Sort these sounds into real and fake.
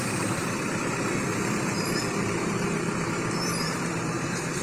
fake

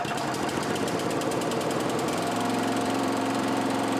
fake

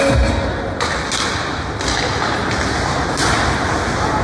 real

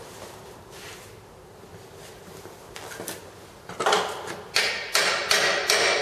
real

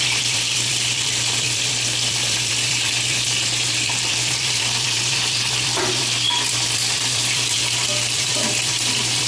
fake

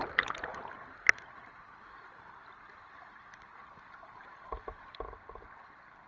real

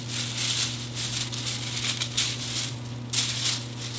real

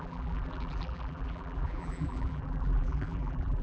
fake